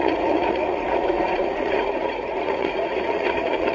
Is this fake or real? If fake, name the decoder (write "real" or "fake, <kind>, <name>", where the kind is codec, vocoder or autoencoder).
fake, vocoder, Vocos